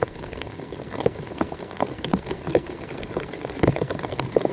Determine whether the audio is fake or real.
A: fake